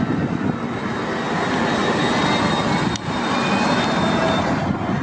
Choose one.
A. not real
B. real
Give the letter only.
B